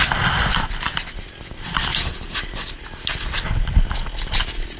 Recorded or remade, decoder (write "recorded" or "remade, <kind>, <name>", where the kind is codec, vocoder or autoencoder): recorded